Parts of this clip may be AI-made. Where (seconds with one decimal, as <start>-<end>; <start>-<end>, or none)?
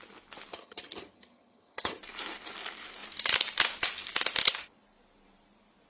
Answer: 0.5-2.0